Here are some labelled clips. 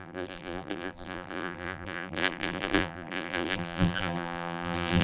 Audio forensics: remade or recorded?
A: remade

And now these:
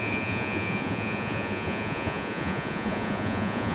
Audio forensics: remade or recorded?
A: remade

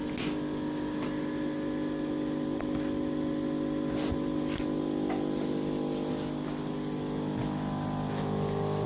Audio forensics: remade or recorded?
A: recorded